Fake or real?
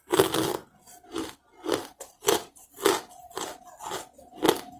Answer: real